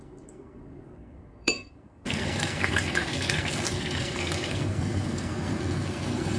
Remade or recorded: remade